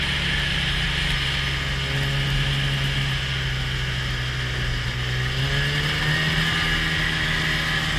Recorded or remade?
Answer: recorded